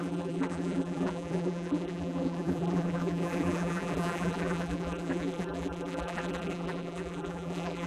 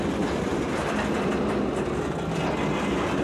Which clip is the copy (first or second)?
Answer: first